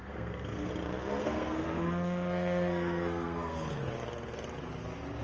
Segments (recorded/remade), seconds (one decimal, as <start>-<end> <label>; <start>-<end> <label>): 0.0-0.7 remade; 0.7-1.2 recorded; 1.2-3.9 remade; 3.9-5.2 recorded